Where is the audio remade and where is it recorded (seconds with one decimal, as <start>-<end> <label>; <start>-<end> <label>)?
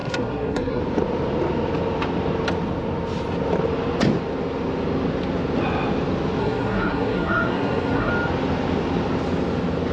0.0-0.8 remade; 0.8-6.4 recorded; 6.4-8.1 remade; 8.1-9.9 recorded